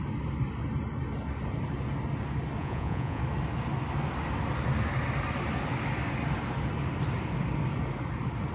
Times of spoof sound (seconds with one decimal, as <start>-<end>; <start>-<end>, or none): 2.6-3.2

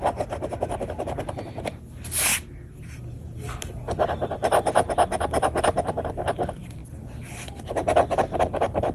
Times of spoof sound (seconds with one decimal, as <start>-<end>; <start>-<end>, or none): none

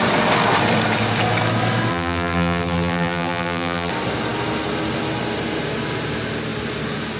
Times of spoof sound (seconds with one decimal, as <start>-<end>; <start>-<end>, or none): 1.9-3.9

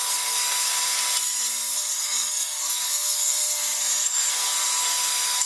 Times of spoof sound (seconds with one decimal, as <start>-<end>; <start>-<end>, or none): 0.0-5.5

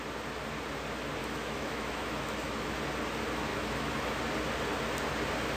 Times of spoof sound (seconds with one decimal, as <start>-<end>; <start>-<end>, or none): 1.2-2.8; 3.5-4.2

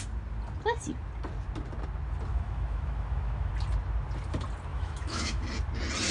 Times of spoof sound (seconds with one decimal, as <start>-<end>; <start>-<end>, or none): 2.3-3.5; 4.7-5.4

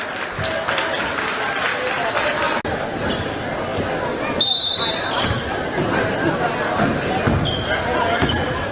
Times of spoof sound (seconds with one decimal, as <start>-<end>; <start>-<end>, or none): 1.7-2.6

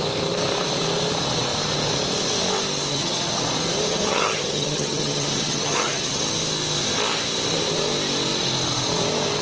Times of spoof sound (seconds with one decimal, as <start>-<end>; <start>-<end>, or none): 2.9-3.4; 3.9-6.2